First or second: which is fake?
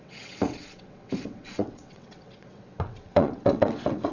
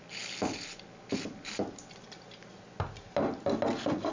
first